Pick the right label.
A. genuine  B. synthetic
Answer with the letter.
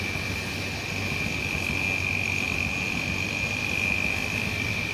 A